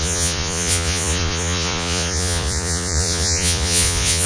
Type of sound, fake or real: fake